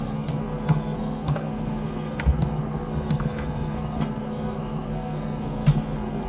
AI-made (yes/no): yes